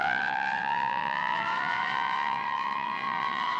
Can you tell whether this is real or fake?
fake